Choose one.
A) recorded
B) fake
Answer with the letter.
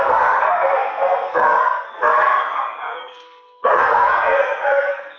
B